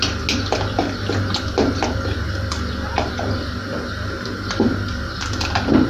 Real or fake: real